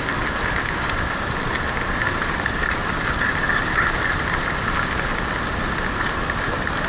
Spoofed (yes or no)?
no